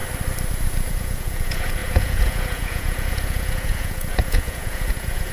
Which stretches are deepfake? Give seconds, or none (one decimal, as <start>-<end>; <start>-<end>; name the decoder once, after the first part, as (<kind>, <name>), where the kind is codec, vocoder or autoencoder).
0.9-5.3 (vocoder, Vocos)